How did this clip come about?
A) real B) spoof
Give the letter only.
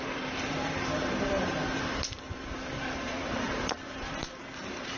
B